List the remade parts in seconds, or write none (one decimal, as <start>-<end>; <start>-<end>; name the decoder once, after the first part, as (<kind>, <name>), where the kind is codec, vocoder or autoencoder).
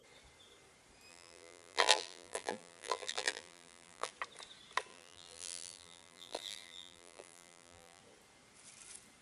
1.1-4.1 (vocoder, BigVGAN v2); 4.9-8.0